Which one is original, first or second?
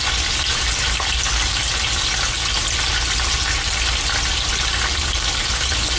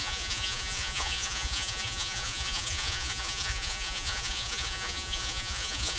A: first